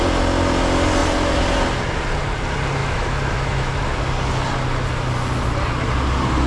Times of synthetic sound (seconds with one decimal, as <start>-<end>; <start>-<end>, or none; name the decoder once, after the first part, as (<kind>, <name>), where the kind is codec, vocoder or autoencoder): 2.8-3.7 (autoencoder, DAC-VAE)